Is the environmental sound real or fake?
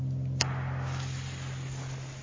real